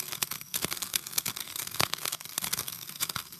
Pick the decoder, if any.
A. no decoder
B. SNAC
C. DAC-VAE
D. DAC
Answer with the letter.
B